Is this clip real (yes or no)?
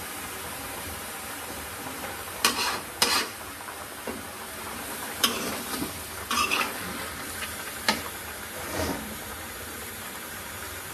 no